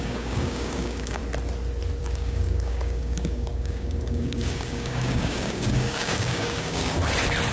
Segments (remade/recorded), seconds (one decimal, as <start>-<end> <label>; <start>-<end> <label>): 0.0-1.2 remade; 1.2-2.0 recorded; 2.0-7.0 remade; 7.0-7.5 recorded